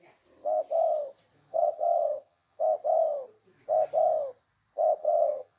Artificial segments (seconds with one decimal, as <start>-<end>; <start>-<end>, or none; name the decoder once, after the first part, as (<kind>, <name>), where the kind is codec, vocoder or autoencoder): 1.5-2.6 (vocoder, HiFi-GAN); 5.0-5.6